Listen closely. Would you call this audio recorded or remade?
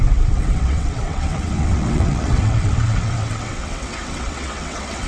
remade